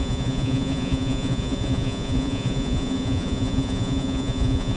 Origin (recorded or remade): remade